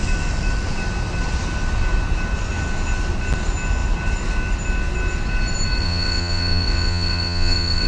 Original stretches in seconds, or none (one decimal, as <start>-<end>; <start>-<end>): 0.0-5.8